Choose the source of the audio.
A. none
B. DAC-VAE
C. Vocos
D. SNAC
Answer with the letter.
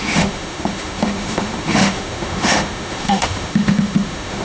B